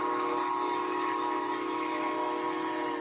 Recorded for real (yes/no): yes